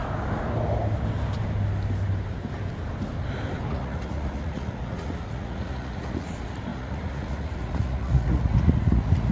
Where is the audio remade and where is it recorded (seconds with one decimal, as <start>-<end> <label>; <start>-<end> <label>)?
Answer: 0.0-3.7 recorded; 3.7-9.3 remade